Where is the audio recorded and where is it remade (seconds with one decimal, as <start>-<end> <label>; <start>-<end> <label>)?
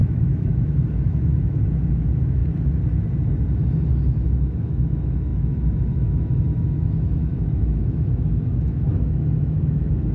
0.0-2.4 remade; 2.4-3.9 recorded; 3.9-10.1 remade